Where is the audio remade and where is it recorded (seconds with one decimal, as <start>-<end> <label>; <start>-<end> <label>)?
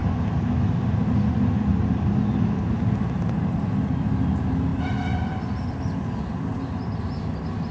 0.0-7.7 recorded